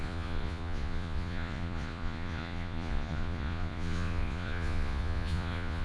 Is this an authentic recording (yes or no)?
no